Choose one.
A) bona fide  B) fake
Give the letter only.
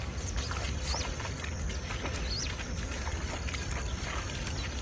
A